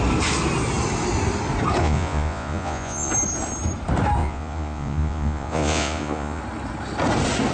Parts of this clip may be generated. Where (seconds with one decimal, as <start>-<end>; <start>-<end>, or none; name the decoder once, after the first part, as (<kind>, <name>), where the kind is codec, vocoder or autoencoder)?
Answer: 1.8-3.1 (vocoder, Vocos); 4.2-6.4